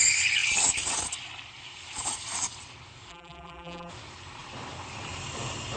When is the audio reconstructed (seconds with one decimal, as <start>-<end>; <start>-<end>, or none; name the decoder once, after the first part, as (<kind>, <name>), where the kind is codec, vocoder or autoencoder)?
3.1-3.9 (vocoder, BigVGAN v2)